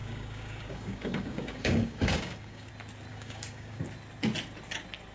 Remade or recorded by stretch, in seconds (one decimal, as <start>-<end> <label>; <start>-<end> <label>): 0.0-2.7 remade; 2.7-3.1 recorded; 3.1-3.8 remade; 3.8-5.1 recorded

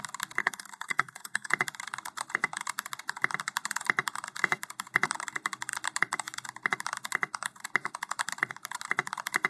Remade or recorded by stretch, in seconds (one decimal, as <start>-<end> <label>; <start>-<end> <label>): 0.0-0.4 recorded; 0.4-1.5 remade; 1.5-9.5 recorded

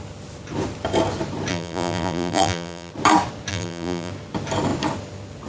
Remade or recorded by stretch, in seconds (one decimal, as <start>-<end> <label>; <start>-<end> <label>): 0.0-1.5 recorded; 1.5-2.9 remade; 2.9-3.5 recorded; 3.5-4.1 remade; 4.1-5.5 recorded

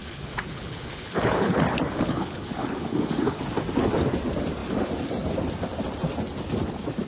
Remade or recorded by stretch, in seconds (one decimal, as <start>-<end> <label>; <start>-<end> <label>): 0.0-3.4 remade; 3.4-7.1 recorded

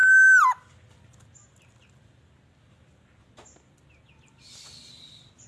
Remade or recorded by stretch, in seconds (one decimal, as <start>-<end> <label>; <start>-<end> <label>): 0.0-5.5 recorded

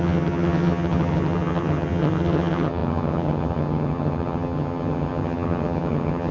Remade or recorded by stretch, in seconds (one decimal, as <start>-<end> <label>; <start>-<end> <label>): 0.0-6.3 remade

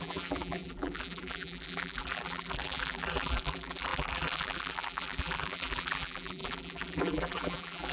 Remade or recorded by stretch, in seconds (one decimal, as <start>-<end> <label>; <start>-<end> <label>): 0.0-7.9 remade